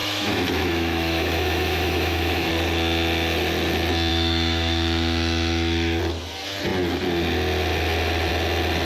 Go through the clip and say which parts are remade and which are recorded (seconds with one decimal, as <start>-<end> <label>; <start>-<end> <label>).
0.0-2.5 remade; 2.5-4.1 recorded; 4.1-6.0 remade; 6.0-8.8 recorded